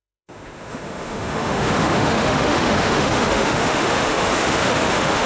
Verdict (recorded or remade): remade